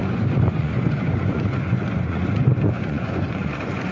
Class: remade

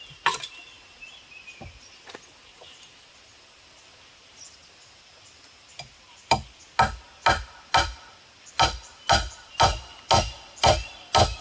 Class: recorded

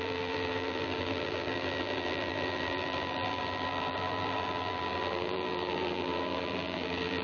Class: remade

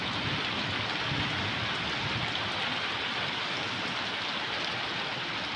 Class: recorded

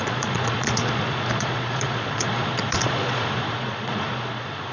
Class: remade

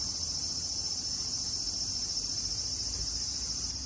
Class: remade